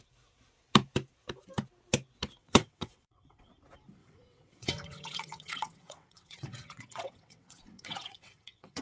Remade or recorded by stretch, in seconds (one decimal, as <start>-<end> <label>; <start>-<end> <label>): 0.0-2.4 recorded; 2.4-3.5 remade; 3.5-4.0 recorded; 4.0-8.8 remade